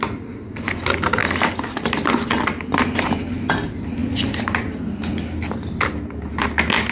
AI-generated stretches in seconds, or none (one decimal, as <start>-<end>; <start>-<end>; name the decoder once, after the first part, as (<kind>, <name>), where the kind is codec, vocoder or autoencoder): none